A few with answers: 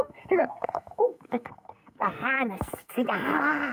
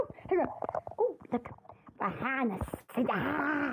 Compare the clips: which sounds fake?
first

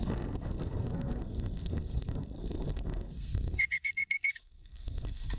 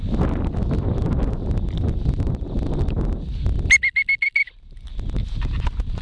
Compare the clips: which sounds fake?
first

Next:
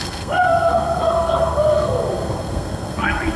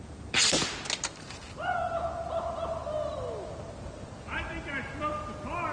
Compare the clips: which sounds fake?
first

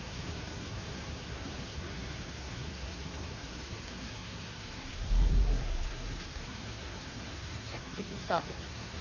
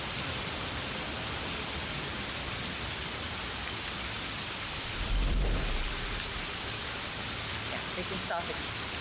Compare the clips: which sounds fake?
first